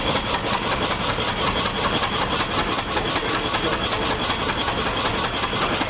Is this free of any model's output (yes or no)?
yes